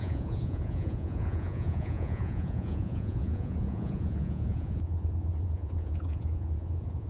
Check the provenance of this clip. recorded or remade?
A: remade